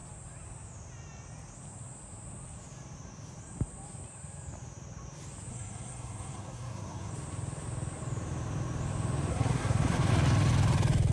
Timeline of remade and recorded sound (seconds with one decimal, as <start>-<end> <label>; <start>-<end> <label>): 0.0-5.5 recorded; 5.5-7.1 remade; 7.1-9.3 recorded; 9.3-10.1 remade; 10.1-11.1 recorded